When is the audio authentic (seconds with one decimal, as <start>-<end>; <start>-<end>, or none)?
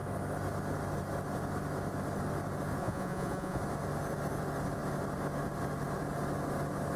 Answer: 0.0-2.8; 3.6-7.0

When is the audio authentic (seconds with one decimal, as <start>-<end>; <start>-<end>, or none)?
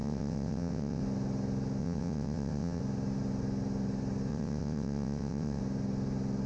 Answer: 1.0-1.8; 2.8-4.3; 5.6-6.5